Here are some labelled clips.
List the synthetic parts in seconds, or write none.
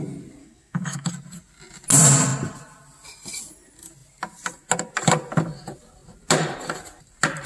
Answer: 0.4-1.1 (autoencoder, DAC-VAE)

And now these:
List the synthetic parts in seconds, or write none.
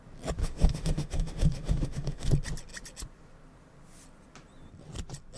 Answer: 0.4-2.3 (autoencoder, DAC-VAE)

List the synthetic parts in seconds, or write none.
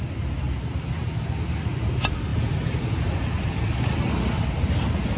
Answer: none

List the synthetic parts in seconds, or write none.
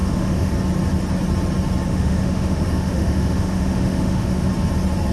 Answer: 0.0-0.5 (autoencoder, DAC-VAE); 1.9-4.5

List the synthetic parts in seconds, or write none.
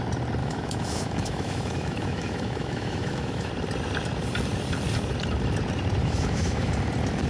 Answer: 0.4-3.5 (autoencoder, DAC-VAE); 6.0-6.7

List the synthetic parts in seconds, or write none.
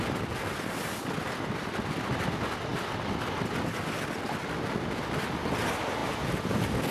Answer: none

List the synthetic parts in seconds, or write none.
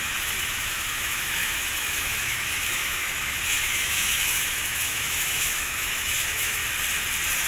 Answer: 0.0-6.6 (autoencoder, DAC-VAE)